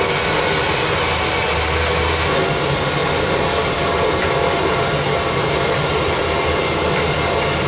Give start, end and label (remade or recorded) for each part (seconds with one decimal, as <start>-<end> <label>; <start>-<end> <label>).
0.0-7.7 recorded